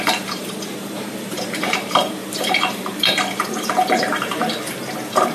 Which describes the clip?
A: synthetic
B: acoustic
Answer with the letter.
A